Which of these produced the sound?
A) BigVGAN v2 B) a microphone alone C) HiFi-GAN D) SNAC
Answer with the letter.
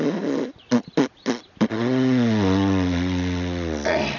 B